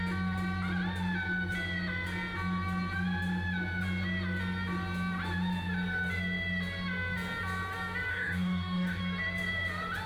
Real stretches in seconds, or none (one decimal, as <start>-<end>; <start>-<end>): 0.0-8.1; 9.0-10.1